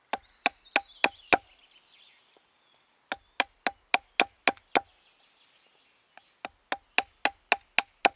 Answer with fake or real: real